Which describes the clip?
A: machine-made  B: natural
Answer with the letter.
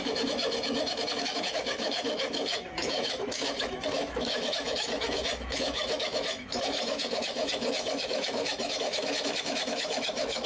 A